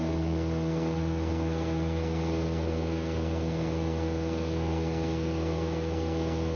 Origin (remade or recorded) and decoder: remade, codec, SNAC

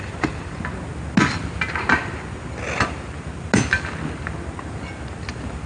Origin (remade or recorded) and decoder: recorded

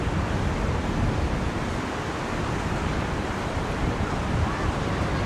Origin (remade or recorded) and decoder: recorded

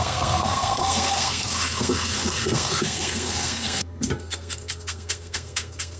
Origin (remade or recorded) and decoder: remade, codec, SNAC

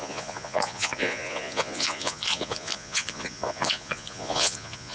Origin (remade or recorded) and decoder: remade, vocoder, Vocos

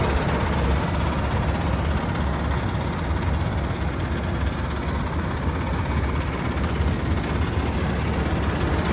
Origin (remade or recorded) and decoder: recorded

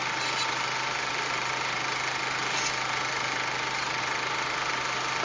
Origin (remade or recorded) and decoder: recorded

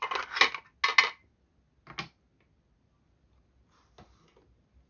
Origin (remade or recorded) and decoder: recorded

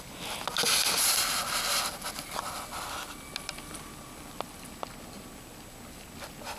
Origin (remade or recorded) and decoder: recorded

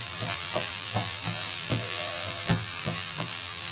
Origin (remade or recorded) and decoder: remade, vocoder, BigVGAN v2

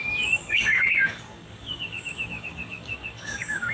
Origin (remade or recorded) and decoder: remade, codec, DAC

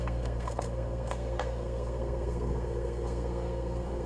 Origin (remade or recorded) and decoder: remade, codec, SNAC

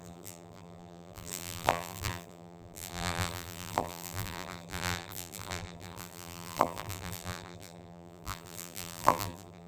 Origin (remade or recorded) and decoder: remade, vocoder, BigVGAN v2